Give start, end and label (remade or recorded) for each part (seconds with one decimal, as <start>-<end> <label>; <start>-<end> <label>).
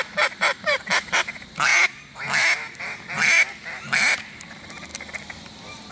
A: 0.0-1.7 remade; 1.7-4.1 recorded; 4.1-5.9 remade